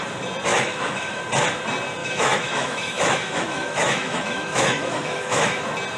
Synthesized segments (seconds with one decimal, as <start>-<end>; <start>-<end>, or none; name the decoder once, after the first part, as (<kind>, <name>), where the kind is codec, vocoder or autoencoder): 0.5-1.2 (autoencoder, DAC-VAE); 2.0-5.6